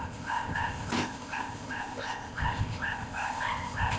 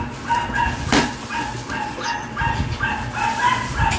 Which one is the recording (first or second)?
second